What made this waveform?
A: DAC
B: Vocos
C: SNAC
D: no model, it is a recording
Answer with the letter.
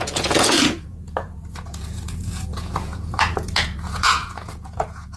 B